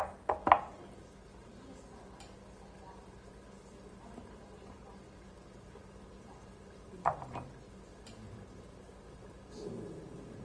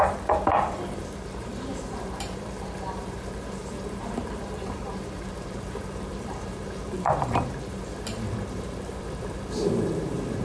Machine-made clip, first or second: second